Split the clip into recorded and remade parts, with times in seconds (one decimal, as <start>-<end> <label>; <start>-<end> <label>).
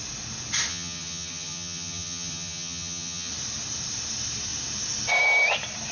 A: 0.0-0.7 recorded; 0.7-3.3 remade; 3.3-5.9 recorded